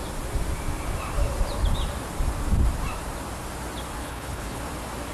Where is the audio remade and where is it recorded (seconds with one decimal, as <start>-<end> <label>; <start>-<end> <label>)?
0.0-4.0 recorded; 4.0-4.6 remade; 4.6-5.1 recorded